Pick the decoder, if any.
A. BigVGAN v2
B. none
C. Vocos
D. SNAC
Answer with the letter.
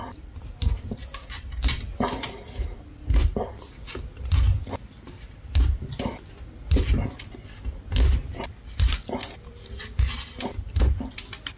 B